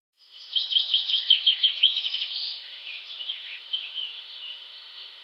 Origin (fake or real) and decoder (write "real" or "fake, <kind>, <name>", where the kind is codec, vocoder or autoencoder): fake, autoencoder, DAC-VAE